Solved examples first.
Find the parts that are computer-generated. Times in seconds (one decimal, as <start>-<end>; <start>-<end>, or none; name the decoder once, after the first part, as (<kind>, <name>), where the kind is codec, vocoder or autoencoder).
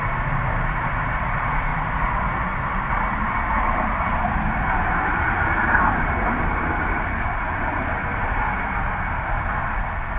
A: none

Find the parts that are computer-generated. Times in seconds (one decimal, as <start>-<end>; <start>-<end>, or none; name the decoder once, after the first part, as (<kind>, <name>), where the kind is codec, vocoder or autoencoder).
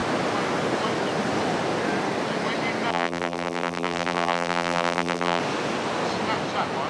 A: 2.9-5.4 (vocoder, BigVGAN v2)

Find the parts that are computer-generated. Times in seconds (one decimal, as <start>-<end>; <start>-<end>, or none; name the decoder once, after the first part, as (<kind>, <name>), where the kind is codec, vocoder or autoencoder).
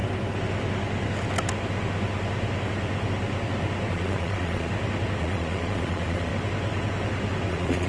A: 3.9-4.7 (vocoder, Vocos); 5.2-6.3; 7.5-7.9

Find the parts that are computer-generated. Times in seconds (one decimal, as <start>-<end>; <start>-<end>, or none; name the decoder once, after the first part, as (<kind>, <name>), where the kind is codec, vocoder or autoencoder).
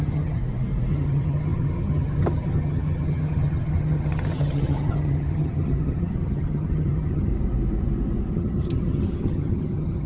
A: 0.0-0.4 (vocoder, HiFi-GAN); 0.9-7.3; 8.3-10.1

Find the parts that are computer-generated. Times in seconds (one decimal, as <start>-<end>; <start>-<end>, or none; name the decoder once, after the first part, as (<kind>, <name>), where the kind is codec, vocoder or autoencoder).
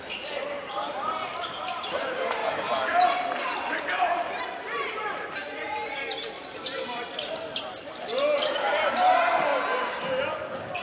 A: 0.0-2.4 (vocoder, BigVGAN v2); 3.7-9.5